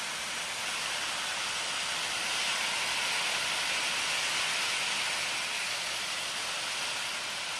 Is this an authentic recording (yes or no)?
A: yes